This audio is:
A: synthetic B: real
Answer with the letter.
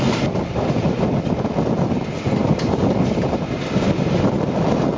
B